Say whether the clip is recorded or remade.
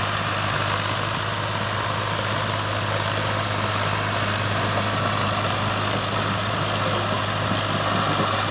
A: recorded